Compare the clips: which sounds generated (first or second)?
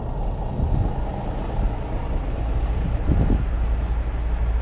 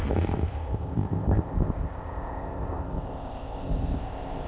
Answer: second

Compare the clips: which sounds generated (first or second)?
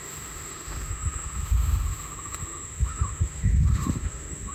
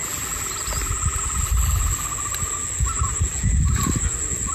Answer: first